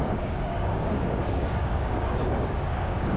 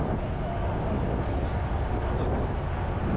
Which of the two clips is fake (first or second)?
first